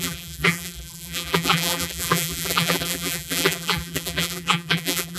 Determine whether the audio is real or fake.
fake